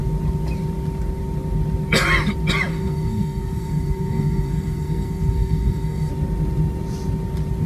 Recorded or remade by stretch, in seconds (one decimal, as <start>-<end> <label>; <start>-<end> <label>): 0.0-2.7 recorded; 2.7-6.1 remade; 6.1-7.7 recorded